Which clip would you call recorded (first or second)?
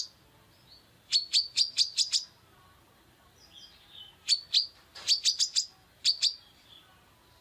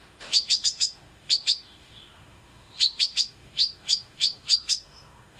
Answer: first